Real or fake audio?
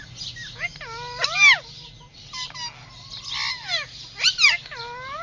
real